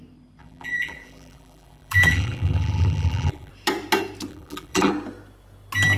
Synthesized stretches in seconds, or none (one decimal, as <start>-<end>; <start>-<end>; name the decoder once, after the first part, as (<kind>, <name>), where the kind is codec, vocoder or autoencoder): 0.4-3.5 (vocoder, BigVGAN v2); 4.3-4.9